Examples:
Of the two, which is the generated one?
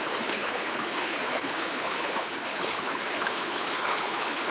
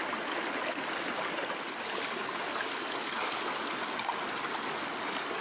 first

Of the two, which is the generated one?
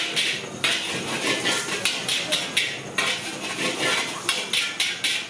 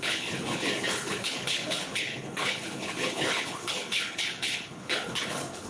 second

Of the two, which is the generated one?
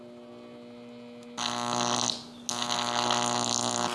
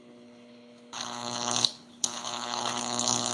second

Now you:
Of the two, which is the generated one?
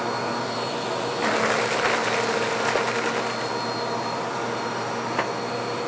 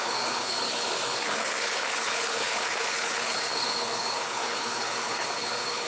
second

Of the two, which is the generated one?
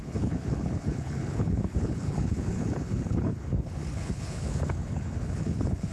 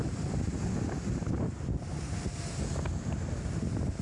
first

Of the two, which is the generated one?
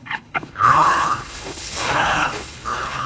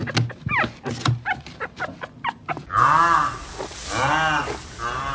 first